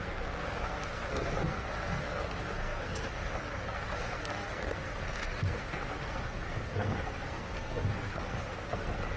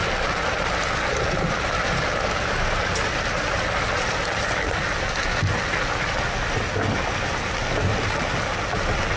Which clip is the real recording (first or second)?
second